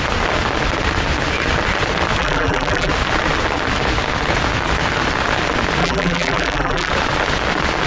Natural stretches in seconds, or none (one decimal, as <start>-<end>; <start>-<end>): 0.0-2.2; 2.9-5.8; 6.9-7.9